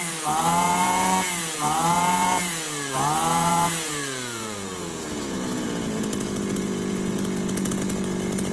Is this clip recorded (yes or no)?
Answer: no